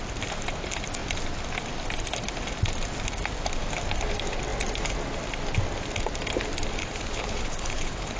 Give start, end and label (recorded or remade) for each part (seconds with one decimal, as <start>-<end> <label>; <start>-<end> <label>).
0.0-6.8 recorded; 6.8-8.2 remade